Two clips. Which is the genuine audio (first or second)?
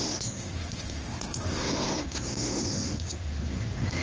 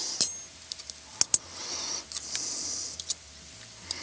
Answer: second